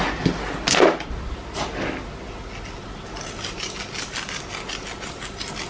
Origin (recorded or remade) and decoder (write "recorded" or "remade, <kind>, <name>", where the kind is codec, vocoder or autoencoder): recorded